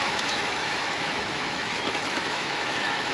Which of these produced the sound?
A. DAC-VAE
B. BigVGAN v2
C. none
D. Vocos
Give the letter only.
A